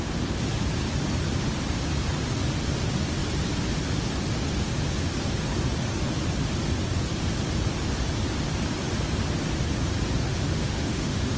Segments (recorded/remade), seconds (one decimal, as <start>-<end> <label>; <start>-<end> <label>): 0.0-10.4 recorded; 10.4-11.4 remade